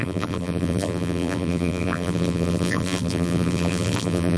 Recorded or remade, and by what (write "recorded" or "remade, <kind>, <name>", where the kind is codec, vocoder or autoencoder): remade, vocoder, BigVGAN v2